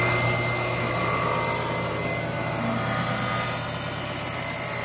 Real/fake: real